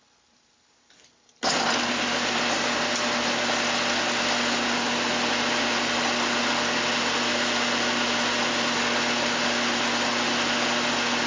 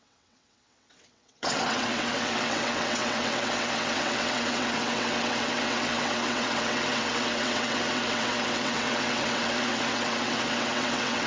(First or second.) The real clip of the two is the first